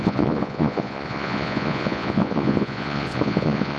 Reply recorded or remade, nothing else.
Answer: remade